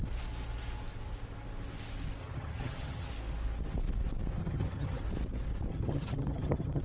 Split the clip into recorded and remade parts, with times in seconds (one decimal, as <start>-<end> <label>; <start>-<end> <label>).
0.0-2.2 recorded; 2.2-3.1 remade; 3.1-4.4 recorded; 4.4-5.0 remade; 5.0-5.7 recorded; 5.7-6.8 remade